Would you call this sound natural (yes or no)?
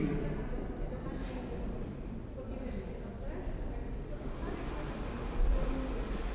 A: yes